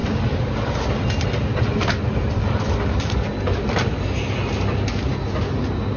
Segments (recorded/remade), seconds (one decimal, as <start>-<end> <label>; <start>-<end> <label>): 0.0-3.6 remade; 3.6-6.0 recorded